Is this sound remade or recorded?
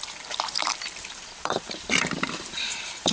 remade